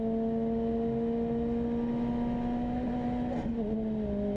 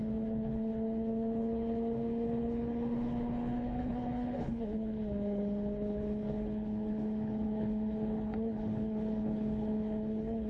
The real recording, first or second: first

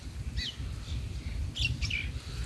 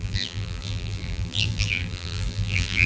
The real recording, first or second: first